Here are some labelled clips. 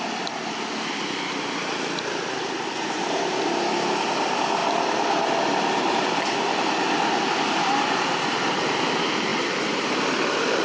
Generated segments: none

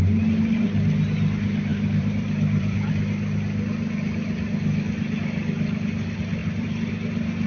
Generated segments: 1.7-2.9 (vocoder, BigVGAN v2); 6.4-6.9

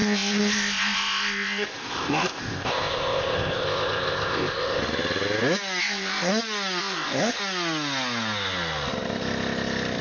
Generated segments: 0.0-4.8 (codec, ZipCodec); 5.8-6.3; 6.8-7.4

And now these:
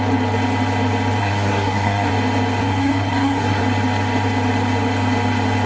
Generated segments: 1.2-2.1 (codec, SNAC); 2.6-3.6

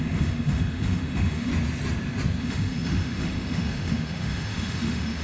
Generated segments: 0.0-1.5 (autoencoder, DAC-VAE); 2.4-5.2

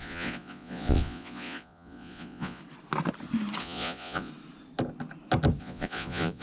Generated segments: 0.0-2.6 (vocoder, Vocos); 3.6-4.3; 5.6-6.4